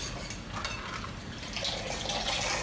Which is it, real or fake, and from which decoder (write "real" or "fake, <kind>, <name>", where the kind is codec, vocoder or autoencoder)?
real